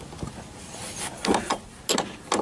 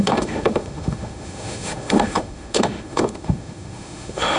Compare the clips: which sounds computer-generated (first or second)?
second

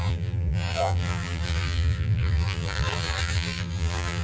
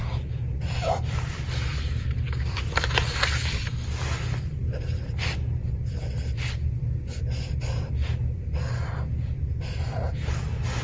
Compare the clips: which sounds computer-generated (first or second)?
first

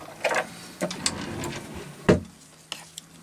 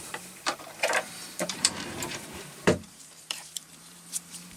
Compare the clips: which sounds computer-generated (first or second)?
second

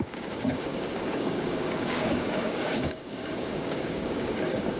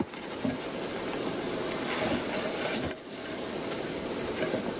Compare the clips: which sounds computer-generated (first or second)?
first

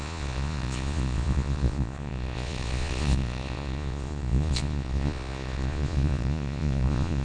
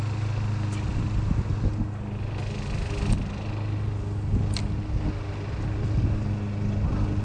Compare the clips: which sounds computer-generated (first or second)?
first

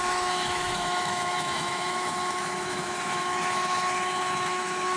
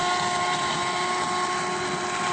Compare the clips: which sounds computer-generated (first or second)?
first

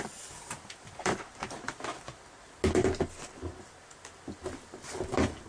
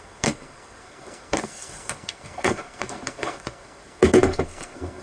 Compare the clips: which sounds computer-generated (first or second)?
second